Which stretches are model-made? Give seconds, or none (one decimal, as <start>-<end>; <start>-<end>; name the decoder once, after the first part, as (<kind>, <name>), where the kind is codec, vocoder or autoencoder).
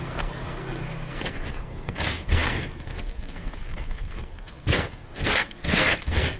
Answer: 0.0-6.4 (codec, SNAC)